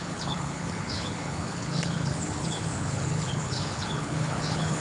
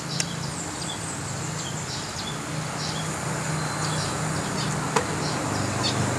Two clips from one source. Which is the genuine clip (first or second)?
second